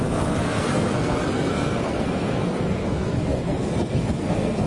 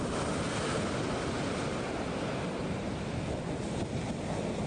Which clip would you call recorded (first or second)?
second